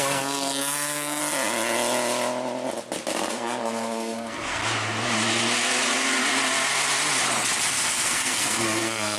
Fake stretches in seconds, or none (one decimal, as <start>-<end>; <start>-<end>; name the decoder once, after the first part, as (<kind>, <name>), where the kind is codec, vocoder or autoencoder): 0.0-1.2 (codec, SNAC); 3.3-4.6; 7.7-9.2